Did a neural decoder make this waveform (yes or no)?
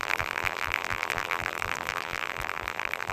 yes